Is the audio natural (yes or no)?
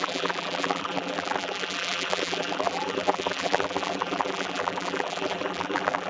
no